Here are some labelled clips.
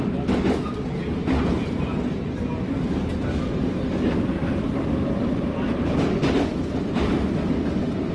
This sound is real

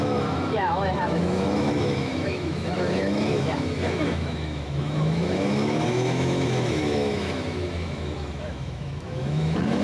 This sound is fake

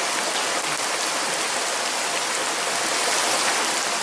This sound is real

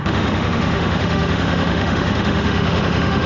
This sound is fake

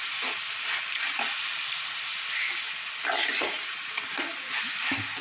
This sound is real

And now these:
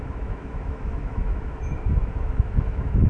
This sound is fake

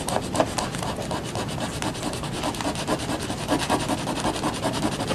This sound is real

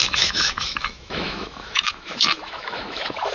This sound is fake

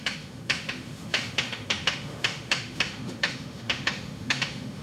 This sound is fake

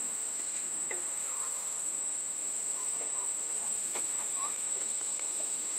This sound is fake